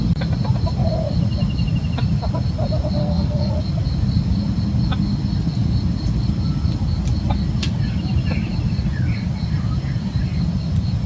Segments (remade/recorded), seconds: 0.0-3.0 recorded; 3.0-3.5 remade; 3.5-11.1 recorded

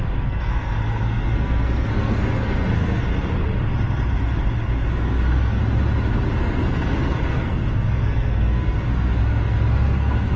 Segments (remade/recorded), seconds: 0.0-3.1 remade; 3.1-4.9 recorded; 4.9-5.6 remade; 5.6-6.4 recorded; 6.4-10.4 remade

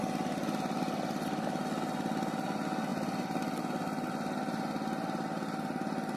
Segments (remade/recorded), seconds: 0.0-6.2 recorded